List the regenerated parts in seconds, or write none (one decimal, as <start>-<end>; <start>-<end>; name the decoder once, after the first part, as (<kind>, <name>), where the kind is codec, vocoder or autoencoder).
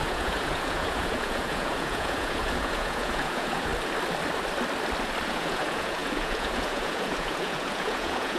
0.0-3.7 (vocoder, Vocos); 5.3-8.4